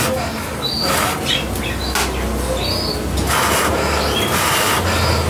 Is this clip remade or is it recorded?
recorded